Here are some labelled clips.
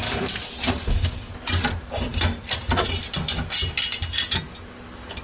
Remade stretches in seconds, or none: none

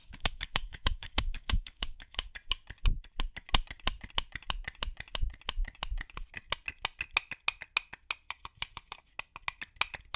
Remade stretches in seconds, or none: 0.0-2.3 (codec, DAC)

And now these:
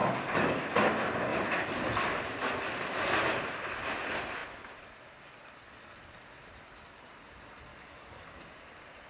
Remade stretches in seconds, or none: 0.0-0.6 (codec, DAC); 7.7-8.4